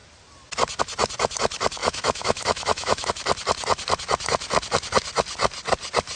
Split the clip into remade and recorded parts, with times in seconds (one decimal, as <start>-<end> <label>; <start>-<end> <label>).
0.0-1.8 recorded; 1.8-3.1 remade; 3.1-6.2 recorded